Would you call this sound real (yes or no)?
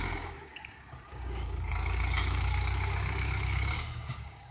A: no